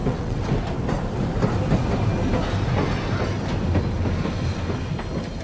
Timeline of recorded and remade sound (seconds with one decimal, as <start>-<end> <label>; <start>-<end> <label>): 0.0-0.5 remade; 0.5-5.4 recorded